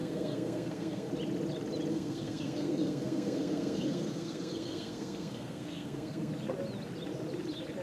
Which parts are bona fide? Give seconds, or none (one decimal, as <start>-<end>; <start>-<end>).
1.1-1.9; 6.3-7.8